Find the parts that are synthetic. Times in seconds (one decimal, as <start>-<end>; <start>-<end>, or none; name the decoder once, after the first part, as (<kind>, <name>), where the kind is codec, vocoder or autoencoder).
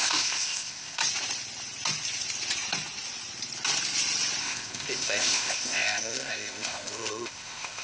0.0-1.0 (codec, ZipCodec); 4.4-7.8